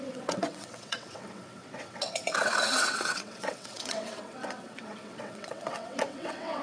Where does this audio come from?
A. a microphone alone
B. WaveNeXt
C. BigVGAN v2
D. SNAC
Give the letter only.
B